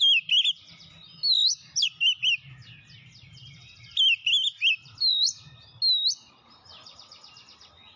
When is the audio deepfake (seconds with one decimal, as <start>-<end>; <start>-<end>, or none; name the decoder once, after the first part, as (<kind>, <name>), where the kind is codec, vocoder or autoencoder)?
none